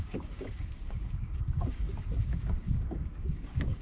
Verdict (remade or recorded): remade